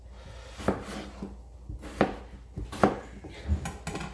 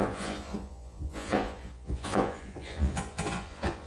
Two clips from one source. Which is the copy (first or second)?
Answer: second